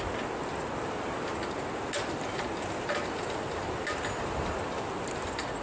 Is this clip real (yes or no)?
yes